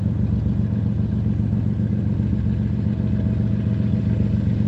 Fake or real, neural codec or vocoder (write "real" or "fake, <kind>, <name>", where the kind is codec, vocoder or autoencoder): real